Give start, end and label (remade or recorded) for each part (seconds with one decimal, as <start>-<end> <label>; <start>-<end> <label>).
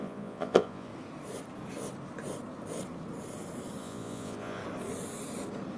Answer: 0.0-0.9 remade; 0.9-3.8 recorded; 3.8-4.6 remade; 4.6-5.8 recorded